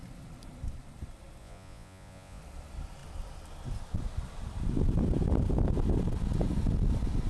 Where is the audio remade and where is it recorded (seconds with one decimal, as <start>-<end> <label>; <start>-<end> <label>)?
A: 0.0-1.4 recorded; 1.4-2.4 remade; 2.4-7.3 recorded